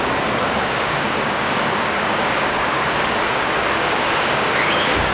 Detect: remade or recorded remade